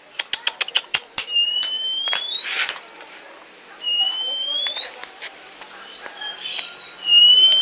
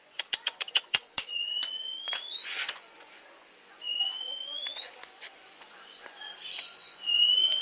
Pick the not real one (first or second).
second